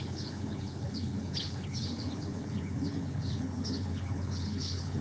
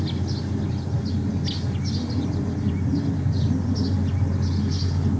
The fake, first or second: first